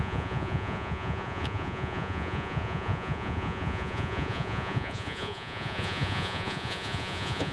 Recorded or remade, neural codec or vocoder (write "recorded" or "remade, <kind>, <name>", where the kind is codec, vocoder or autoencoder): remade, vocoder, Vocos